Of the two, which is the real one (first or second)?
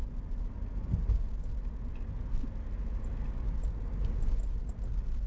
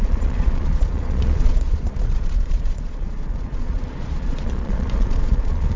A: first